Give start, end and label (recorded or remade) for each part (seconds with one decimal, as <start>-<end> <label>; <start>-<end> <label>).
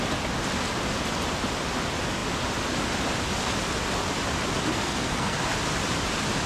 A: 0.0-4.7 recorded; 4.7-5.4 remade; 5.4-6.5 recorded